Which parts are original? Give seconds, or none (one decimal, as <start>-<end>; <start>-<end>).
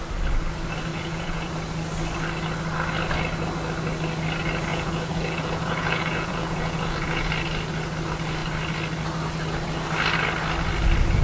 0.0-0.9; 1.5-4.7; 7.3-11.2